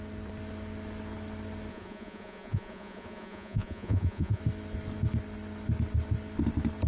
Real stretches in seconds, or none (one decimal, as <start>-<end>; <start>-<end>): 0.0-1.7; 4.4-6.9